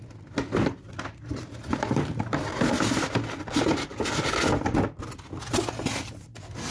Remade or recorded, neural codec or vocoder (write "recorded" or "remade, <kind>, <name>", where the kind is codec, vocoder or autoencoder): recorded